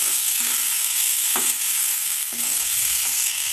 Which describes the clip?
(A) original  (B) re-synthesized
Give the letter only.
B